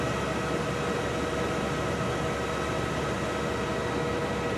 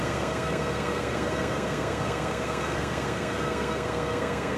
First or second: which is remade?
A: second